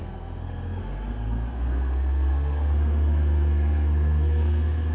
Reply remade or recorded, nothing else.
remade